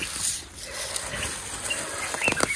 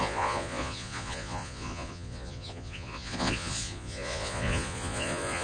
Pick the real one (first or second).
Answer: first